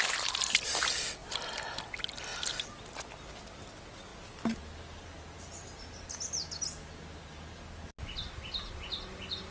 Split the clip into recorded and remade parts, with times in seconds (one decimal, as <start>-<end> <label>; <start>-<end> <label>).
0.0-9.5 recorded